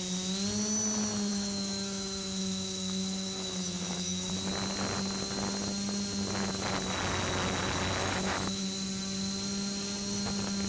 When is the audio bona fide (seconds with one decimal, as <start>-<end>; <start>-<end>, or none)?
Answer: 0.0-1.3; 4.3-8.0; 8.6-10.7